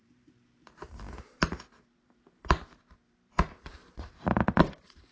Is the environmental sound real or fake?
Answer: fake